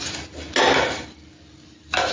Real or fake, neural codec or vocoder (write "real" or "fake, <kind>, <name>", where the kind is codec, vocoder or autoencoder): real